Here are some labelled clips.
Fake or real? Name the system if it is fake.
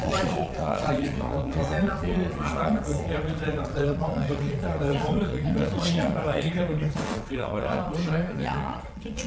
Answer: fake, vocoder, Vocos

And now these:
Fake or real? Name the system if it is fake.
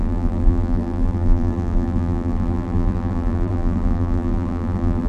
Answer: fake, vocoder, BigVGAN v2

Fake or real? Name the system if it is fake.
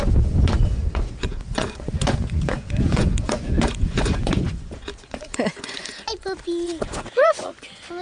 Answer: fake, vocoder, Vocos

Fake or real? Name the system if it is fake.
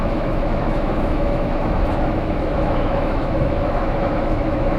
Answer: fake, autoencoder, DAC-VAE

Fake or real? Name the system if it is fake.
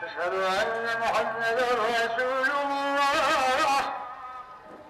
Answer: real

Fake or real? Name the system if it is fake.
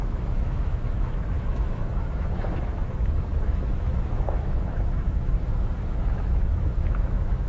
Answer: fake, autoencoder, DAC-VAE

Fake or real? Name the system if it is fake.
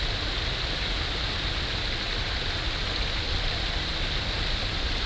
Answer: real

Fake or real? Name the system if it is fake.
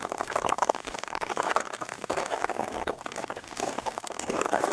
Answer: fake, codec, DAC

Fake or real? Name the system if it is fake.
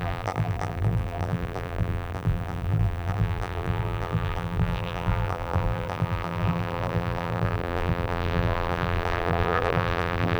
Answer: fake, vocoder, BigVGAN v2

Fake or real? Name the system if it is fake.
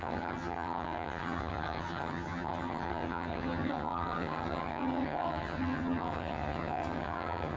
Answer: fake, vocoder, HiFi-GAN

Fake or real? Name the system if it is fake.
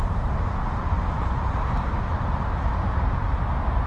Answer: real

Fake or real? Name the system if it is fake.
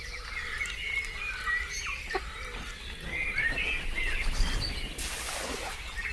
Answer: real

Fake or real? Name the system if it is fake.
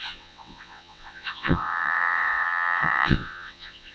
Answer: fake, vocoder, WaveNeXt